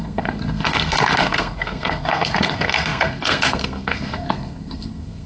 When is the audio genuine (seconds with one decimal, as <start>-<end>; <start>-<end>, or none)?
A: none